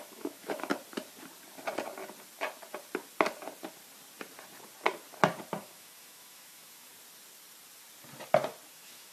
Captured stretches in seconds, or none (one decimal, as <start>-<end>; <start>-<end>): 0.7-5.6; 6.9-8.7